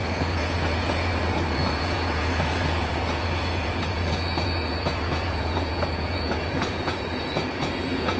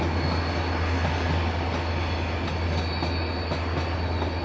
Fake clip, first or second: first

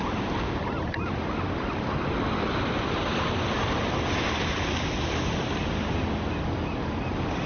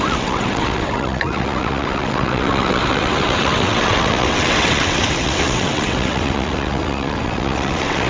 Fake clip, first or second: second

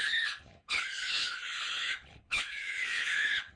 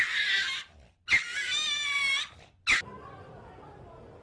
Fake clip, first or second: first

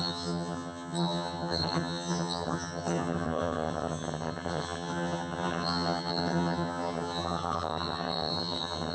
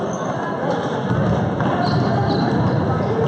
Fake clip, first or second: first